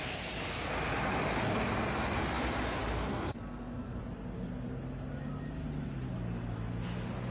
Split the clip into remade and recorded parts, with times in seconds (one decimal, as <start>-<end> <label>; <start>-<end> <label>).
0.0-3.1 recorded; 3.1-4.0 remade; 4.0-7.3 recorded